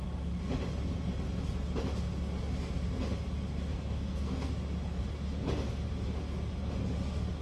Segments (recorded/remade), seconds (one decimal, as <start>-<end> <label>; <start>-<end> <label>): 0.0-3.7 recorded; 3.7-4.5 remade; 4.5-7.4 recorded